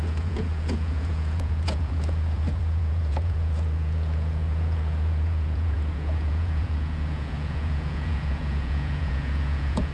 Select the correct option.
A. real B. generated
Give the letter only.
B